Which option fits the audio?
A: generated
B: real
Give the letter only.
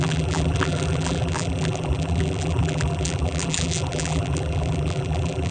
A